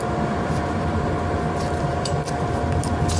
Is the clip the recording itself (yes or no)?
no